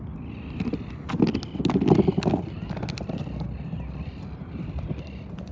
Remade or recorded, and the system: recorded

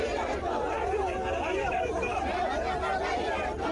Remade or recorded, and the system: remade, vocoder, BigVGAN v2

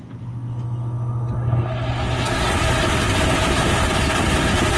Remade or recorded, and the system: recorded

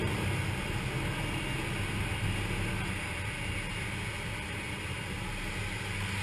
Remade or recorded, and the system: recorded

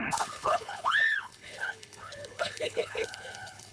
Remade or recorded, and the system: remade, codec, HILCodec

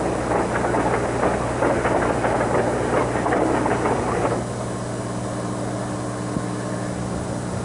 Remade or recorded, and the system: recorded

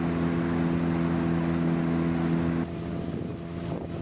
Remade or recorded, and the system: recorded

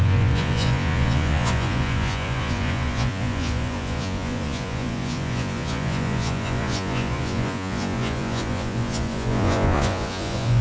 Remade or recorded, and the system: remade, vocoder, Vocos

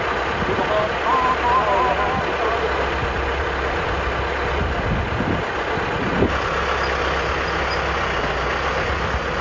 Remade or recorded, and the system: recorded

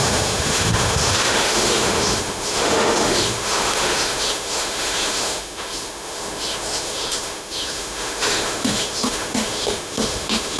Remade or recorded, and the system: remade, autoencoder, DAC-VAE